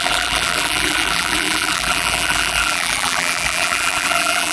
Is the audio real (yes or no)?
no